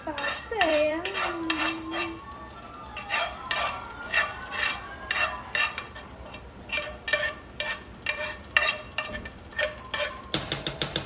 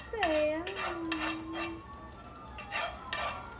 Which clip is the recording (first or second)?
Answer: second